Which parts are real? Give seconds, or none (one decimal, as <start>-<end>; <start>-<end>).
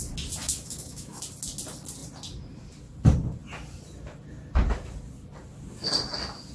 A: 0.0-0.4; 1.2-6.5